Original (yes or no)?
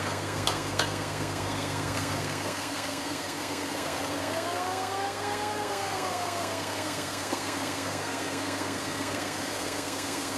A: no